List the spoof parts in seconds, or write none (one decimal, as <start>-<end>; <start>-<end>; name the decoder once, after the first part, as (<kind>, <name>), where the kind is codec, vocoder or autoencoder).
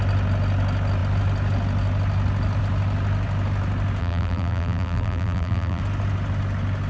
4.0-5.8 (vocoder, BigVGAN v2)